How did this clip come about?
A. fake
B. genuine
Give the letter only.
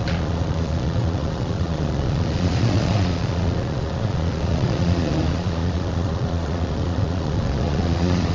A